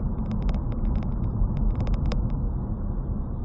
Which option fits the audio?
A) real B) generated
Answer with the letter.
B